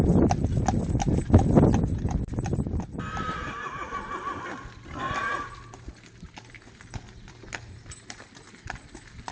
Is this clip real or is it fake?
real